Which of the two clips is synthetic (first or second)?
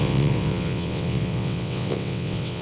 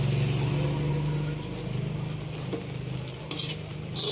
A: first